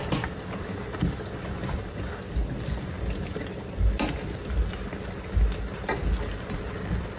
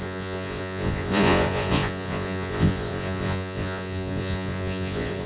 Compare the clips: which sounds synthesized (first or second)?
second